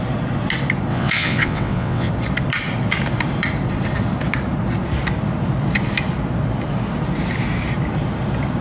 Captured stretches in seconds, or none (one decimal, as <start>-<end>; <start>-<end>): 0.0-0.9; 2.1-8.6